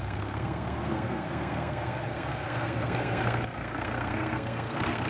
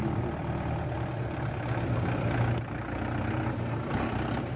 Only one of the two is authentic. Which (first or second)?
second